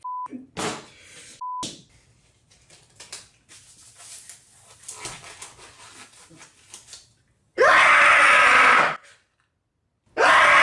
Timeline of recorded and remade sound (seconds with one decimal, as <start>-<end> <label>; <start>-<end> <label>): 0.0-10.6 recorded